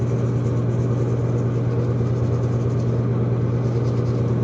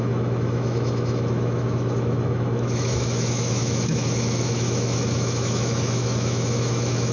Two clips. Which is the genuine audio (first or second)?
first